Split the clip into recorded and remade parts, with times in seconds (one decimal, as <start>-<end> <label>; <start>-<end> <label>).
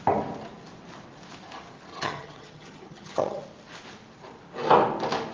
0.0-1.9 recorded; 1.9-3.4 remade; 3.4-5.3 recorded